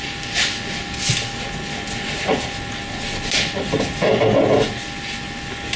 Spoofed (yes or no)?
no